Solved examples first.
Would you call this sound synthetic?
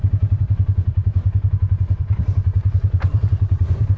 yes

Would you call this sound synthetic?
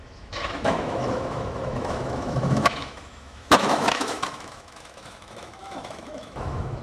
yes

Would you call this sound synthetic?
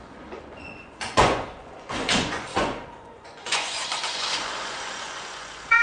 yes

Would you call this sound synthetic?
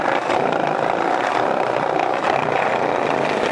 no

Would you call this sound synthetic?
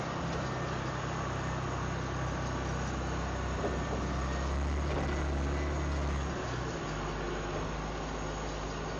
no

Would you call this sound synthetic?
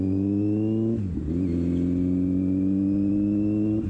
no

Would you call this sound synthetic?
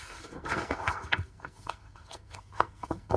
yes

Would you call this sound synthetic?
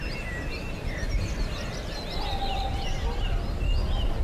no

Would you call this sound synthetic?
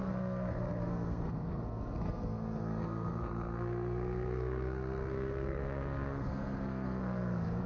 yes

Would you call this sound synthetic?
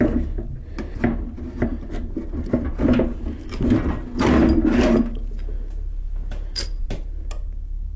no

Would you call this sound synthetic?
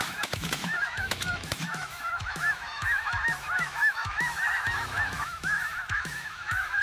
yes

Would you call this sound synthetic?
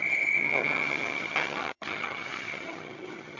yes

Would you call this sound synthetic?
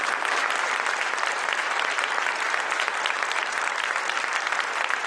no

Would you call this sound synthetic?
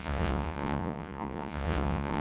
yes